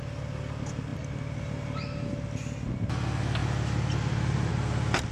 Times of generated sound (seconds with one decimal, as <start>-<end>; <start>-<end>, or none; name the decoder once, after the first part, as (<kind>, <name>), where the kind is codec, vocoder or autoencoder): 3.4-4.5 (vocoder, BigVGAN v2)